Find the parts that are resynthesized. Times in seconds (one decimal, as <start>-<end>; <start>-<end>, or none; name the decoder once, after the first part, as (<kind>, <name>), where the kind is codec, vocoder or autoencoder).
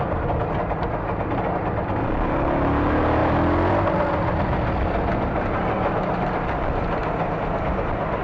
none